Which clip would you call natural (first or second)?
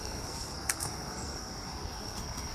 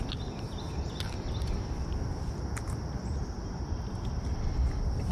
second